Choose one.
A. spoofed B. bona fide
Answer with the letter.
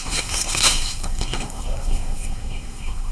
A